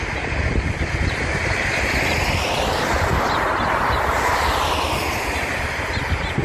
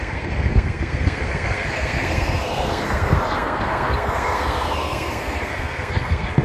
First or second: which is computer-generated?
second